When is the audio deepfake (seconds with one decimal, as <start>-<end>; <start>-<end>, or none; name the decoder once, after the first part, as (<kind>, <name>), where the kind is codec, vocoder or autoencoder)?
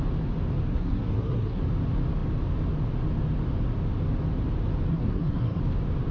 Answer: 0.7-1.6 (codec, SNAC); 4.9-5.6